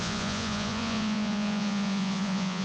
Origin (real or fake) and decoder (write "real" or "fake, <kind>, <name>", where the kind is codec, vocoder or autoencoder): fake, vocoder, Vocos